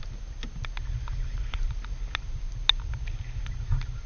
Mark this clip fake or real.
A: real